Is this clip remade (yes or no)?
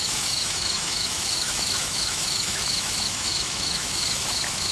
yes